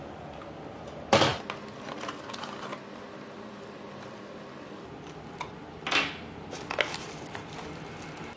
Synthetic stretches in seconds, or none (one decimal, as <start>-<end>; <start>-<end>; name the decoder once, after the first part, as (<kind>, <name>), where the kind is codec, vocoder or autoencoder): none